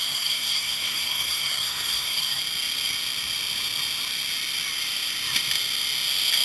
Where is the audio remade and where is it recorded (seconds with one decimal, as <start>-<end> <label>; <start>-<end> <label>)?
0.0-2.4 remade; 2.4-6.4 recorded